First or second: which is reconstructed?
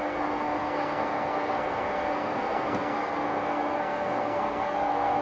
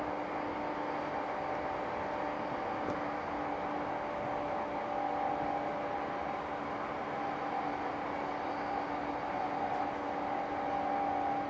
first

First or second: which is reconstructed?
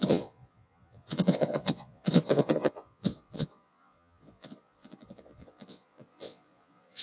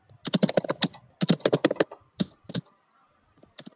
first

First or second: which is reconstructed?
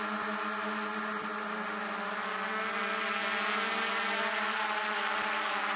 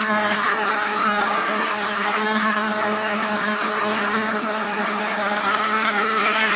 second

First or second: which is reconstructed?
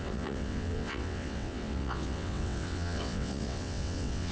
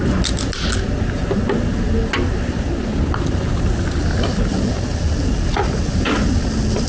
first